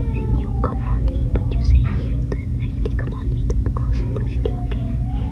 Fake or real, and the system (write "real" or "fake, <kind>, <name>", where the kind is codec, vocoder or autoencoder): fake, codec, DAC